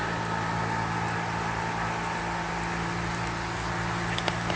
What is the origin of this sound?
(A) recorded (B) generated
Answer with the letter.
A